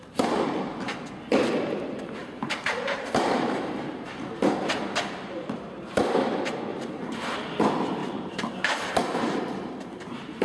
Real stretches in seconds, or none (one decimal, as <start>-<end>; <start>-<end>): 0.0-2.2; 3.7-6.7; 7.6-8.0; 9.7-10.4